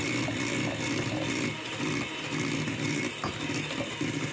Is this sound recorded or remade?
recorded